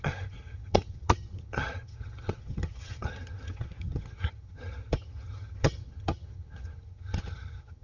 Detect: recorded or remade remade